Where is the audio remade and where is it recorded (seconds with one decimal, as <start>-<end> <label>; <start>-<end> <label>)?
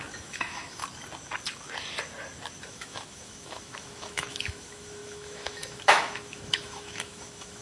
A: 0.0-0.8 remade; 0.8-2.6 recorded; 2.6-7.6 remade